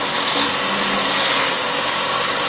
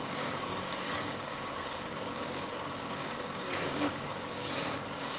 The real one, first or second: first